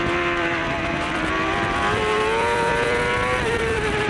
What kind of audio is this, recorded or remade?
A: remade